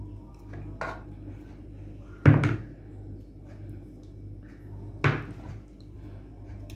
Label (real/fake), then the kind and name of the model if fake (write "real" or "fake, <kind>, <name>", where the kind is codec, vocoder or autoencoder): real